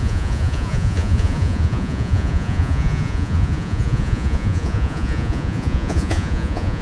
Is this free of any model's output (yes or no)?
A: no